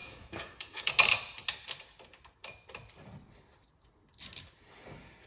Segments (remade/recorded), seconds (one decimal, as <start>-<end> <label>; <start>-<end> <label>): 0.0-0.9 remade; 0.9-5.3 recorded